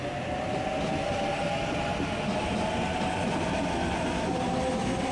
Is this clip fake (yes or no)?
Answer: no